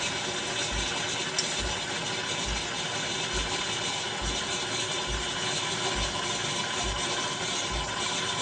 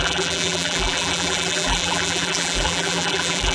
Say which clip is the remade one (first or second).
second